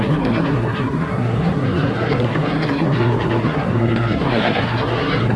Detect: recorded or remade remade